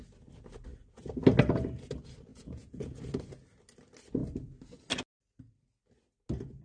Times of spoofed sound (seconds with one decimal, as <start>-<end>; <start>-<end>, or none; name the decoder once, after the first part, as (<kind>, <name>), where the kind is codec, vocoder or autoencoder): 2.3-3.0 (vocoder, Vocos)